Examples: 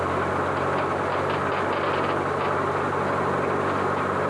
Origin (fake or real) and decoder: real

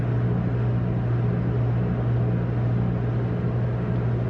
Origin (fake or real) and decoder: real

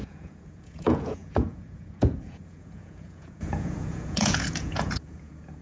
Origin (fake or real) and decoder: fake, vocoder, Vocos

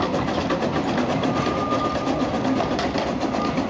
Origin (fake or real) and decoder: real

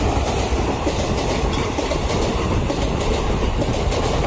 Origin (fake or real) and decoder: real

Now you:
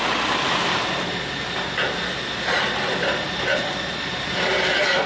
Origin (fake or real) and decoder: real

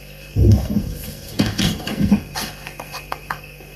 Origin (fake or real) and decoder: fake, codec, SNAC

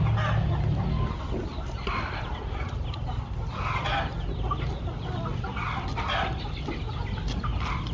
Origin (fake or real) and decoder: real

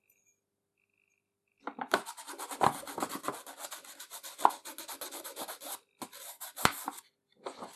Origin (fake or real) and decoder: real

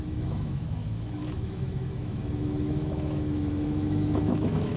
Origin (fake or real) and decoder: fake, autoencoder, DAC-VAE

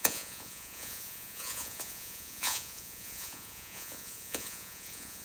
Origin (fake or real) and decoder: fake, vocoder, Vocos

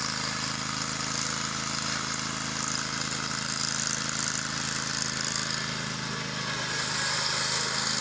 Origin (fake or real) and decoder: real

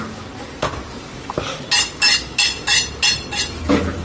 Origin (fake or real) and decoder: real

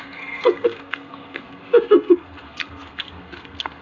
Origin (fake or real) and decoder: fake, codec, SNAC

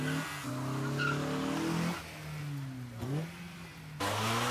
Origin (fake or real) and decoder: real